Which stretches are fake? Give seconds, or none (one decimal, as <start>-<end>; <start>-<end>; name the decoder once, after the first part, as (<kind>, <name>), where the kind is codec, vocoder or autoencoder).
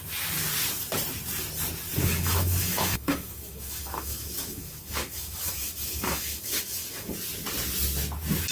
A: 2.0-7.1 (autoencoder, DAC-VAE)